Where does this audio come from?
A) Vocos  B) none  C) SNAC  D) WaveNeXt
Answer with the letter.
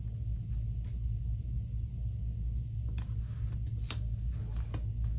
B